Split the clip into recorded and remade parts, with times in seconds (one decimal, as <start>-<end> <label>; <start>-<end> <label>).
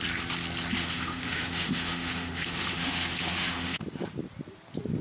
0.0-0.8 recorded; 0.8-3.8 remade; 3.8-5.0 recorded